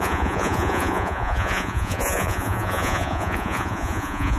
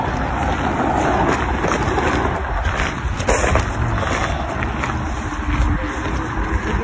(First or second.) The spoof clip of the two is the first